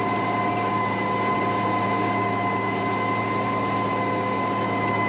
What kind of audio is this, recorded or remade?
recorded